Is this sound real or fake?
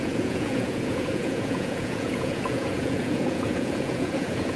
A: fake